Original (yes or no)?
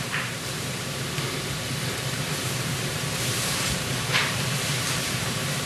no